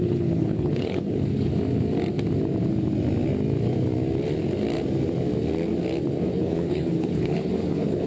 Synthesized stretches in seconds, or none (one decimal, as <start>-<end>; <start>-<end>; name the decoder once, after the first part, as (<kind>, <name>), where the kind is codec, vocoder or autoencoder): 0.0-1.5 (codec, HILCodec); 6.3-8.1